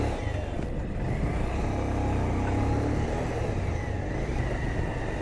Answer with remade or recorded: recorded